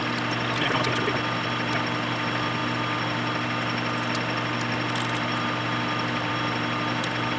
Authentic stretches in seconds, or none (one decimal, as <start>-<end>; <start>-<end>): 0.0-7.4